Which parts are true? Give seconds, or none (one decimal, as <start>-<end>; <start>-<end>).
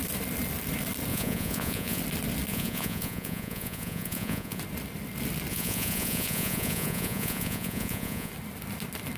0.0-1.1; 2.0-2.5; 4.6-5.5; 8.3-9.2